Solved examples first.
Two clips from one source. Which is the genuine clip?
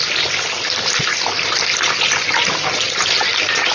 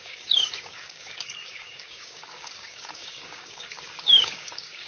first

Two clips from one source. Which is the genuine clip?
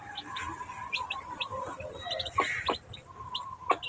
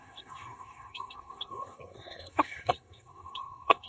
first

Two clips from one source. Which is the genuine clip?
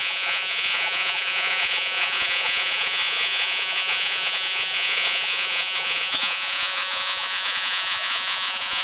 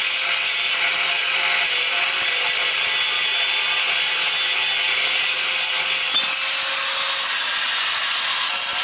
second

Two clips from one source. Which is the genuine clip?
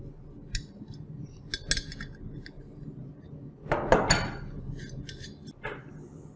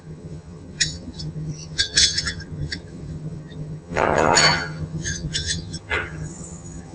first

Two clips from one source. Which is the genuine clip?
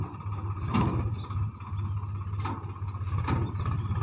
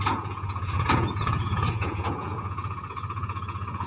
first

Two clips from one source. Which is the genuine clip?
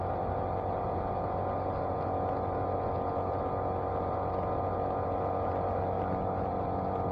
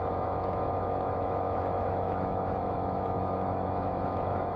first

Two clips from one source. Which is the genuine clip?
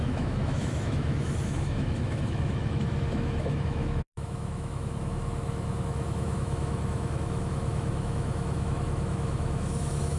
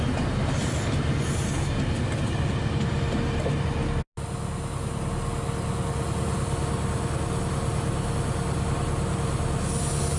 second